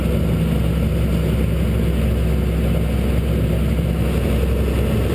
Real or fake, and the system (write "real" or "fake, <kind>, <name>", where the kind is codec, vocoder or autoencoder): real